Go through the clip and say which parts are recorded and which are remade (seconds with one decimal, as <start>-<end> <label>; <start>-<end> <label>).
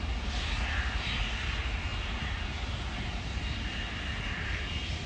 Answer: 0.0-5.1 recorded